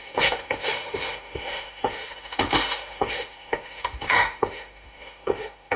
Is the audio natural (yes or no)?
no